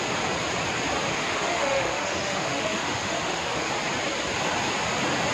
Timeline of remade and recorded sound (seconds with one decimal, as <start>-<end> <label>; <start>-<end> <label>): 0.0-1.1 recorded; 1.1-3.7 remade; 3.7-5.3 recorded

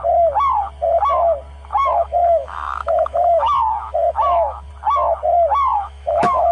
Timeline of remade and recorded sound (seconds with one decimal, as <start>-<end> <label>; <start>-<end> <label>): 0.0-1.8 recorded; 1.8-4.7 remade; 4.7-5.7 recorded; 5.7-6.5 remade

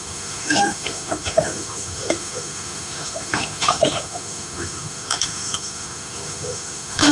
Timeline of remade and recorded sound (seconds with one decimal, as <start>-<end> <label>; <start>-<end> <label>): 0.0-7.1 remade